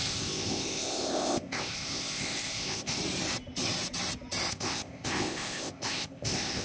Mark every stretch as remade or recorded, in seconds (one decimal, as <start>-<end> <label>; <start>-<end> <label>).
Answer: 0.0-3.0 remade; 3.0-4.5 recorded; 4.5-6.6 remade